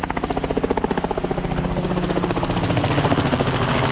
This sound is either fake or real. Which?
real